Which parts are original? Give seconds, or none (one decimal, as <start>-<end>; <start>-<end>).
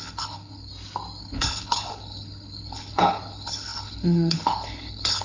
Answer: 0.7-1.2